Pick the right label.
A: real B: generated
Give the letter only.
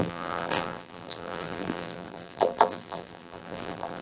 B